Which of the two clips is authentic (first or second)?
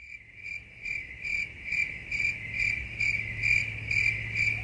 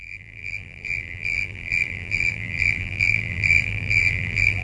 first